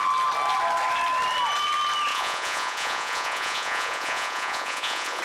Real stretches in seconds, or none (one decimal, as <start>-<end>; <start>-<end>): 0.0-2.1